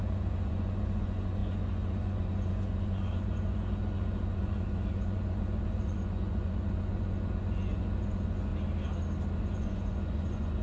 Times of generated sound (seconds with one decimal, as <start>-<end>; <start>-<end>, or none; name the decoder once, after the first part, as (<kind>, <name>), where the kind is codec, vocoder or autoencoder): 0.0-8.5 (vocoder, Vocos); 9.4-10.6